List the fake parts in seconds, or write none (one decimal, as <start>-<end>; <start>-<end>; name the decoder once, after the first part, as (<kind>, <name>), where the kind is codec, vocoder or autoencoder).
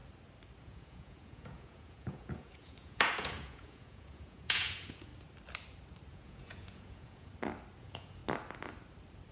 0.6-5.1 (vocoder, Vocos); 6.1-7.3; 7.8-8.2